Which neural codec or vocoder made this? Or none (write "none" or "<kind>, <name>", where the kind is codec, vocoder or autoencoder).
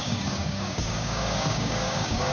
codec, DAC